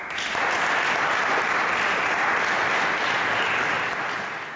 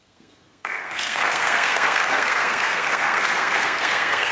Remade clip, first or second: second